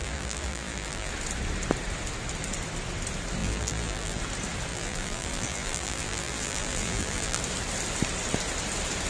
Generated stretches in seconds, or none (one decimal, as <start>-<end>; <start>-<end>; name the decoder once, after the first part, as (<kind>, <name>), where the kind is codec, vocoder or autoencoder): 0.0-1.1 (vocoder, BigVGAN v2); 3.4-4.2; 4.7-7.4